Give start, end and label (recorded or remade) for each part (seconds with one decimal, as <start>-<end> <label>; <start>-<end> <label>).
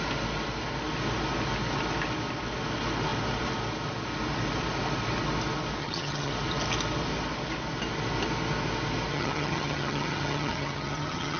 0.0-5.8 recorded; 5.8-6.3 remade; 6.3-9.1 recorded; 9.1-11.4 remade